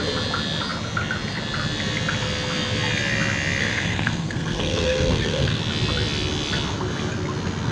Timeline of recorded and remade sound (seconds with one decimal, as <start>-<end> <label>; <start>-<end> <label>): 0.0-3.6 recorded; 3.6-5.6 remade; 5.6-7.7 recorded